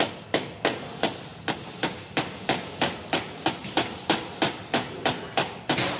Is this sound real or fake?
real